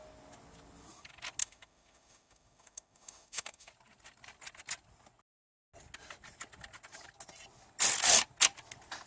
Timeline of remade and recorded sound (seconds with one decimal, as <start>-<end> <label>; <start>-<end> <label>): 0.0-1.4 recorded; 1.4-3.7 remade; 3.7-9.1 recorded